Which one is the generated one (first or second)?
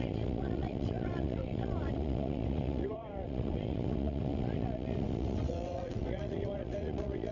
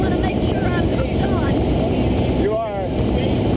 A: first